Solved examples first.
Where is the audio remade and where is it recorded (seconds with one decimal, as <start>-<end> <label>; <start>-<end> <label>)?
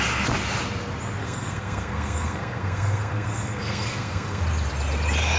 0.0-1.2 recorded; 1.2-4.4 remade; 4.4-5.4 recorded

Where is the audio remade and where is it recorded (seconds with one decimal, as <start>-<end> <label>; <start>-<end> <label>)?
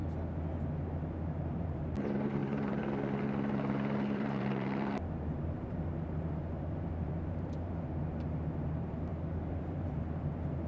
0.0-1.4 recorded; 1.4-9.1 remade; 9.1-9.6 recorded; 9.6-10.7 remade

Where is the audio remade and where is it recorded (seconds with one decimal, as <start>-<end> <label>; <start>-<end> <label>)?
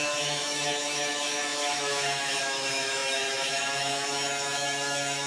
0.0-5.3 remade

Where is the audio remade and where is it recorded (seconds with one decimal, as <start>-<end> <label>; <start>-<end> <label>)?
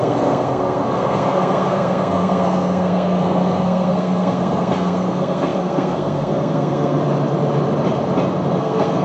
0.0-7.0 remade; 7.0-8.6 recorded; 8.6-9.0 remade